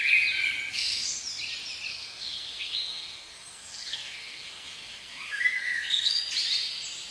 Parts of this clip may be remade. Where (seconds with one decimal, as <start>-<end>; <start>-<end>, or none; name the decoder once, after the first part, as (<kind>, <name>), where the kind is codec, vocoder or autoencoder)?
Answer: 0.7-1.2 (codec, SNAC); 1.9-6.2